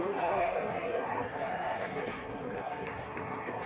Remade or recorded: remade